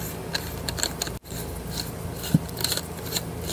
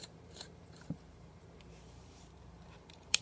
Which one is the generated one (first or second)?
second